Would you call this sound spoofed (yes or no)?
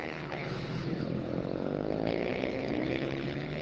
yes